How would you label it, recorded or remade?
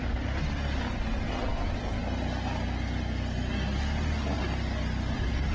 recorded